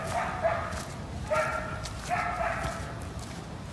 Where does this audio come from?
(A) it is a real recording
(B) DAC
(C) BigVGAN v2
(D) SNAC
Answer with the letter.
A